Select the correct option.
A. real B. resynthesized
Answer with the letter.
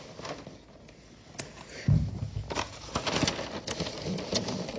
A